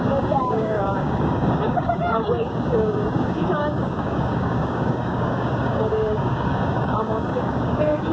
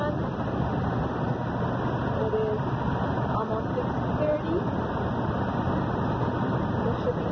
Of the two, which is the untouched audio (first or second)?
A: second